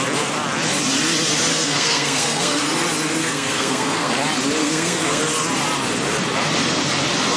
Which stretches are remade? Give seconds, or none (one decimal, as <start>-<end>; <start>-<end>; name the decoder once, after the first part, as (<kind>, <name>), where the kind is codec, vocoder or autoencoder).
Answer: 1.5-2.6 (codec, SNAC); 3.2-4.1; 4.6-5.2